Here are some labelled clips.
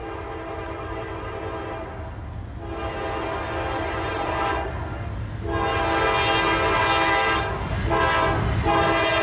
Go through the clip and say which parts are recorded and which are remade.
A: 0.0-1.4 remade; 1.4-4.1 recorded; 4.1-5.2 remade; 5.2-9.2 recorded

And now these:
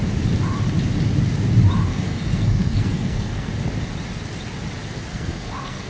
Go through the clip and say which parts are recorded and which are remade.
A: 0.0-1.9 recorded; 1.9-3.5 remade; 3.5-5.1 recorded; 5.1-5.9 remade

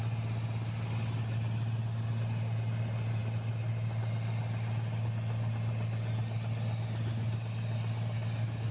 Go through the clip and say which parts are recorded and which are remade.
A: 0.0-8.7 recorded

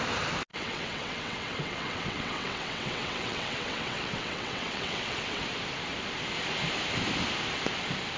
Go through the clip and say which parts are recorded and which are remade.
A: 0.0-0.5 recorded; 0.5-5.4 remade; 5.4-8.2 recorded